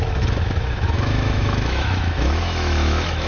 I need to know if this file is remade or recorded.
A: remade